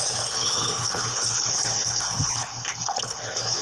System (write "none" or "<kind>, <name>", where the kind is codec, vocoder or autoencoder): codec, HILCodec